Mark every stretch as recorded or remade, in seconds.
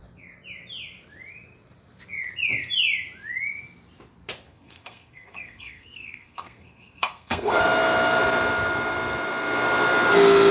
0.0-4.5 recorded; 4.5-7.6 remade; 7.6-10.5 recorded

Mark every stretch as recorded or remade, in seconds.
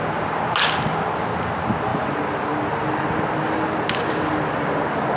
0.0-5.2 recorded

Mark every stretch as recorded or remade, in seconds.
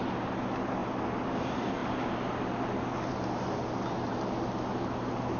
0.0-5.4 recorded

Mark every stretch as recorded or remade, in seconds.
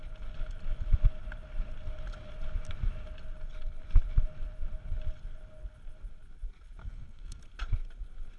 0.0-6.8 recorded; 6.8-7.4 remade; 7.4-8.4 recorded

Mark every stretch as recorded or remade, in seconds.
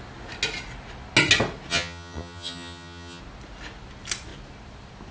0.0-1.7 recorded; 1.7-3.2 remade; 3.2-5.1 recorded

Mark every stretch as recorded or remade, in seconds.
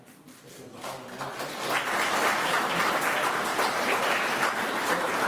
0.0-5.3 recorded